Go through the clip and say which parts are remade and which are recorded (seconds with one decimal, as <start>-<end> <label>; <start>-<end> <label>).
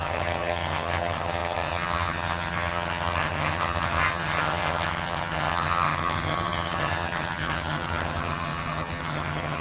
0.0-9.6 remade